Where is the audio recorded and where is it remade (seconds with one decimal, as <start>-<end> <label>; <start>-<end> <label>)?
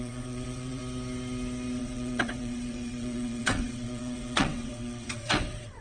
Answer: 0.0-0.8 remade; 0.8-1.8 recorded; 1.8-5.8 remade